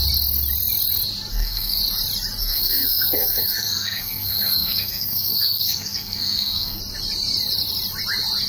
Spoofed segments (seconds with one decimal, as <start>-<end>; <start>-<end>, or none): 1.3-1.8; 2.4-6.8

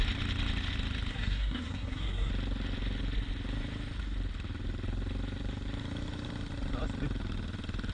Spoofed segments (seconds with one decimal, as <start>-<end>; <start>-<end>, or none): 1.1-2.3